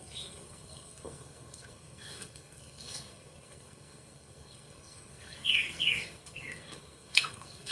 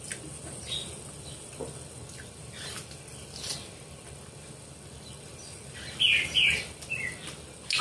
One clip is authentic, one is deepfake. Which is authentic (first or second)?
second